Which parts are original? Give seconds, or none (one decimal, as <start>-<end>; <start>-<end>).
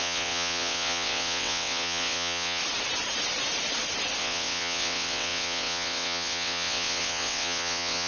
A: 2.6-4.2